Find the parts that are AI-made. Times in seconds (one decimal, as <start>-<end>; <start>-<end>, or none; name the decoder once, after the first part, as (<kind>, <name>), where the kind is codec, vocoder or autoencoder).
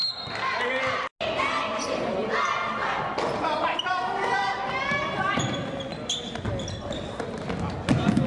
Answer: none